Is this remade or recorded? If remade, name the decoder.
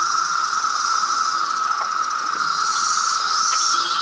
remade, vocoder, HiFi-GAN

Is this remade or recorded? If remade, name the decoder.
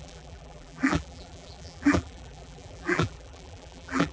remade, vocoder, BigVGAN v2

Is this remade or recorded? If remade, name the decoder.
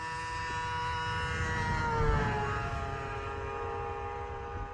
recorded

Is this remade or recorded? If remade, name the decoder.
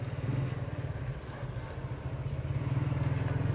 recorded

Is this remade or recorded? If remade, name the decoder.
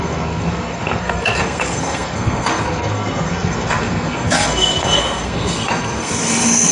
remade, codec, SNAC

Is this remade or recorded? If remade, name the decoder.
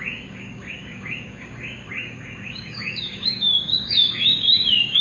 remade, codec, DAC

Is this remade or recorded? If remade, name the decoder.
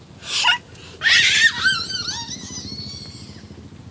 recorded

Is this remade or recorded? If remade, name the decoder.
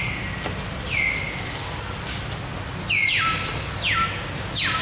recorded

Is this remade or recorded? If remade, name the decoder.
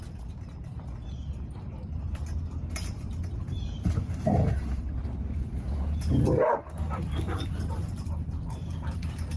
recorded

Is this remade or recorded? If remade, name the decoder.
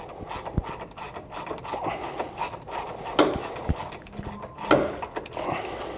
recorded